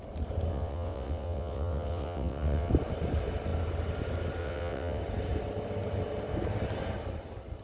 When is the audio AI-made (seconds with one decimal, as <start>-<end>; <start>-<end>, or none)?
0.5-2.7; 4.4-5.0